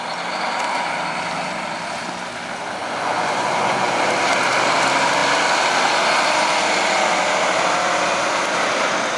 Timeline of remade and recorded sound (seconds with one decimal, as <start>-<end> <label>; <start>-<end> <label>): 0.0-2.8 recorded; 2.8-4.0 remade; 4.0-9.2 recorded